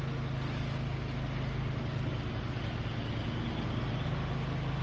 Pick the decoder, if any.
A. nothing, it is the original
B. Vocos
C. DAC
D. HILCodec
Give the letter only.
A